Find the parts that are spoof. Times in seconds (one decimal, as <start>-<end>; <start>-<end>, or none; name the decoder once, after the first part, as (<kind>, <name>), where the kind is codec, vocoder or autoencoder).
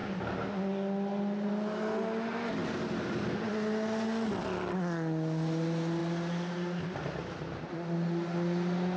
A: none